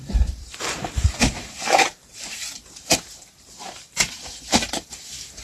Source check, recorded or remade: remade